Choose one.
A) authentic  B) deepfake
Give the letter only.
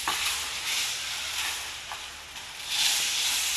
A